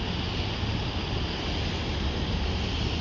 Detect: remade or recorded recorded